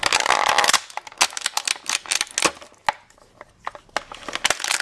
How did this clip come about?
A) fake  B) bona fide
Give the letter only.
B